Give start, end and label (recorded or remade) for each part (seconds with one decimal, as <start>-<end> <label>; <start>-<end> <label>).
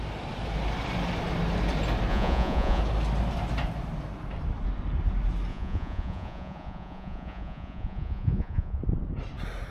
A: 0.0-2.1 recorded; 2.1-2.8 remade; 2.8-5.5 recorded; 5.5-8.8 remade; 8.8-9.7 recorded